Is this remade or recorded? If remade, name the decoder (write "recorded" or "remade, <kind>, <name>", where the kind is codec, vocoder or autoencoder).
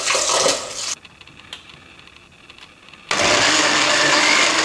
recorded